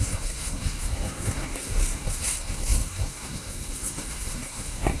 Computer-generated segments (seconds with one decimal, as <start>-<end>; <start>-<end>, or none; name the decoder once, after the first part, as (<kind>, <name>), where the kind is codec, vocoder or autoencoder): 0.0-5.0 (codec, SNAC)